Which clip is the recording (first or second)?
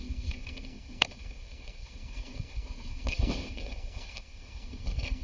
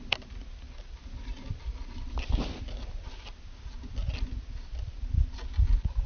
second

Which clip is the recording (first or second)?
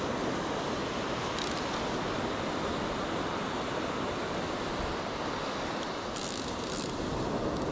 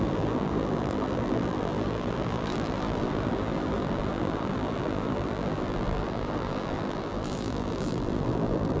first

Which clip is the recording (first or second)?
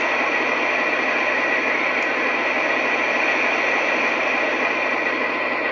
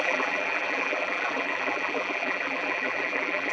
first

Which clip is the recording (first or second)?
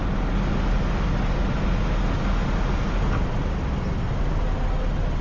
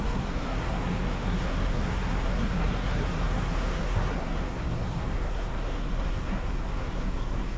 first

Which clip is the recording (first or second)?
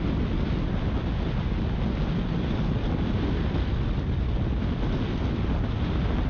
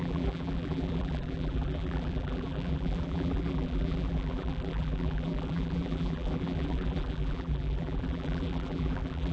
first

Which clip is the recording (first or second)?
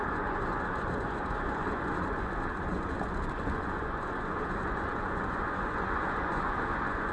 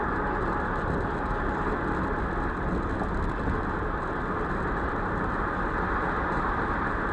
second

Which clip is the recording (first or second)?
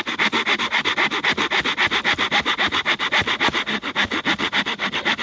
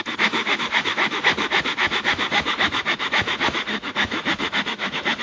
first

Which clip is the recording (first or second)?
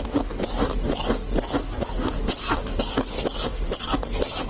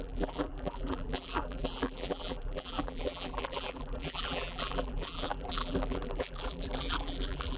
first